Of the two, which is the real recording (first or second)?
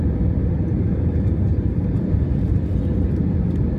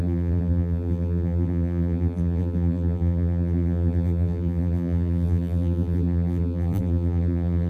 first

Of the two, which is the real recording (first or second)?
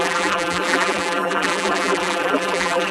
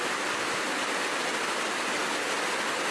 second